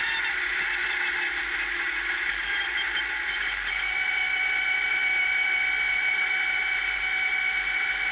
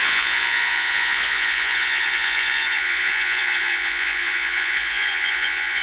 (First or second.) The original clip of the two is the first